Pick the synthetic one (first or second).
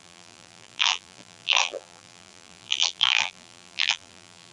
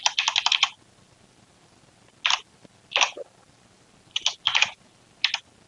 first